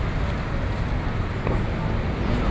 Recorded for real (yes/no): yes